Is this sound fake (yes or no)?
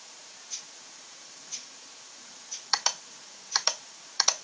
yes